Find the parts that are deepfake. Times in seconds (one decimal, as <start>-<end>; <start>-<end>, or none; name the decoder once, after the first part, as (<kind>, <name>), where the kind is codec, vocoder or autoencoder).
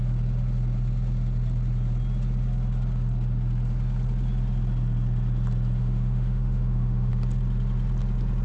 5.8-7.1 (autoencoder, DAC-VAE)